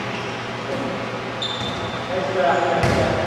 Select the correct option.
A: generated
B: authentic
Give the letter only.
B